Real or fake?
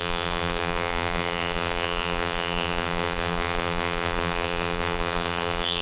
fake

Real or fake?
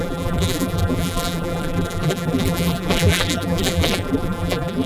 fake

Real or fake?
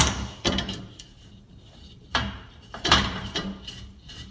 fake